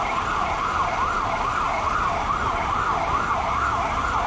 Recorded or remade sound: recorded